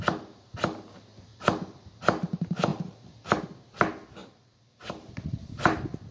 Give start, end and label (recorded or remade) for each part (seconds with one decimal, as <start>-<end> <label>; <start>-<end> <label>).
0.0-1.3 recorded; 1.3-2.0 remade; 2.0-2.7 recorded; 2.7-3.4 remade; 3.4-4.2 recorded; 4.2-5.4 remade; 5.4-6.1 recorded